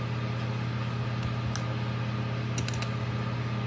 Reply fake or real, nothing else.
real